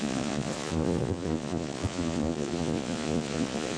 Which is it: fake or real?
fake